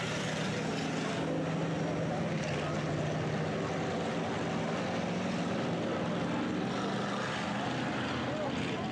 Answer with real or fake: real